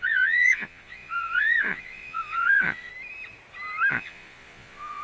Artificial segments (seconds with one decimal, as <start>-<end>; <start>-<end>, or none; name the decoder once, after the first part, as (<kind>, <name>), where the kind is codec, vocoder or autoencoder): 0.0-2.9 (vocoder, Vocos); 3.9-5.0